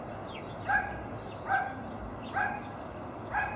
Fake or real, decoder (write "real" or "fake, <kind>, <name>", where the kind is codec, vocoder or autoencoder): real